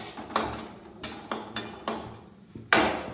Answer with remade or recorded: recorded